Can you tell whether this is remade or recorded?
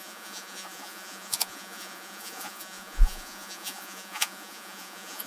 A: remade